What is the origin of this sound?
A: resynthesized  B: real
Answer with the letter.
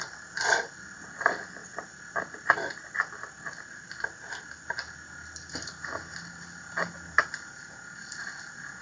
B